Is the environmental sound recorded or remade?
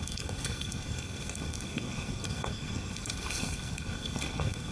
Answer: remade